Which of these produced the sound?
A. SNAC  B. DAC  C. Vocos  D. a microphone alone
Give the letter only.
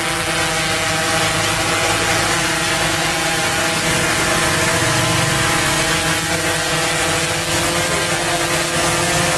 D